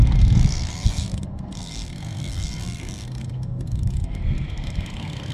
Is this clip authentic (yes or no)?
no